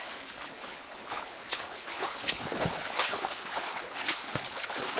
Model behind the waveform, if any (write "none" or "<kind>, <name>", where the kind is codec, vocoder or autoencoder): codec, HILCodec